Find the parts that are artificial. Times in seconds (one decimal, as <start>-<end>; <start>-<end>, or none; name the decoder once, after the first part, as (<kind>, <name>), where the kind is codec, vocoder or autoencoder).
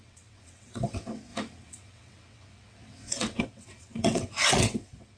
0.0-5.2 (vocoder, WaveNeXt)